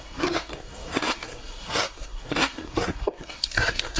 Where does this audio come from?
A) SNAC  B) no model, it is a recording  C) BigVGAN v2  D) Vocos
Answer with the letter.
A